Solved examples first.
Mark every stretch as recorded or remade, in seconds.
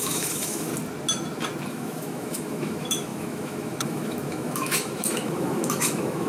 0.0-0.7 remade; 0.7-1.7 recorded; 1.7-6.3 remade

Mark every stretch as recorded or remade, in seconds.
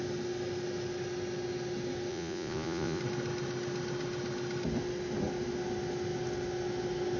0.0-2.1 recorded; 2.1-3.0 remade; 3.0-7.2 recorded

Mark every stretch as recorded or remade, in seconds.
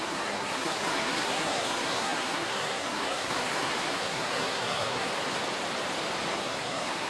0.0-5.1 remade; 5.1-6.3 recorded; 6.3-7.1 remade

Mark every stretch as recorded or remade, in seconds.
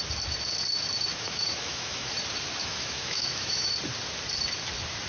0.0-1.1 recorded; 1.1-2.1 remade; 2.1-2.6 recorded; 2.6-3.7 remade; 3.7-5.1 recorded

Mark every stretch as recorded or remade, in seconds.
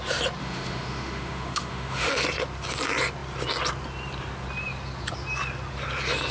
0.0-0.4 recorded; 0.4-2.1 remade; 2.1-6.3 recorded